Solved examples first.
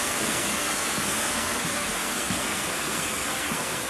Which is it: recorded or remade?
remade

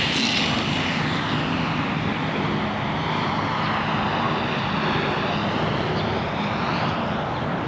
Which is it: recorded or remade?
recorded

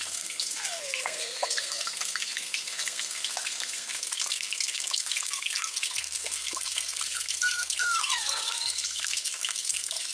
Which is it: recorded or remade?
remade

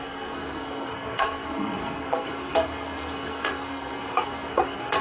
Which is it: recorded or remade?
remade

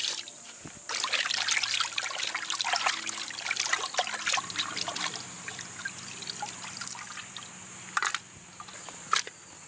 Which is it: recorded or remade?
recorded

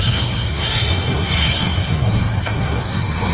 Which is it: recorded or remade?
remade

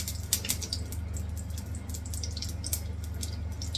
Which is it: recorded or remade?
recorded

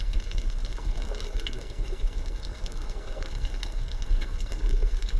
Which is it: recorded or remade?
remade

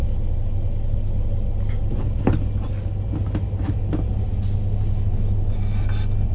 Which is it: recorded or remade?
recorded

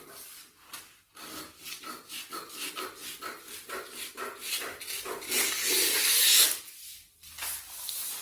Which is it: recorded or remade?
recorded